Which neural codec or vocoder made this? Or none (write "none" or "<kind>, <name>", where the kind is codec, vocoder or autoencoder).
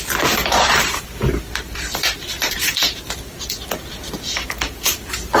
vocoder, BigVGAN v2